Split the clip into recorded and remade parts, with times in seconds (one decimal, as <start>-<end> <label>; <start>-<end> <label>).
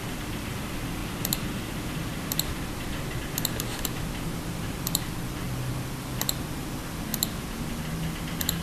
0.0-1.0 remade; 1.0-4.7 recorded; 4.7-7.1 remade; 7.1-7.7 recorded; 7.7-8.6 remade